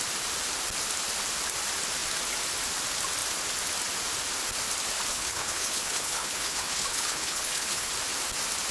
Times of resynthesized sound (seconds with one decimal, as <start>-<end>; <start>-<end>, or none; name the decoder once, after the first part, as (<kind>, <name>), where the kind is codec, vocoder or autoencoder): 5.1-7.9 (codec, HILCodec)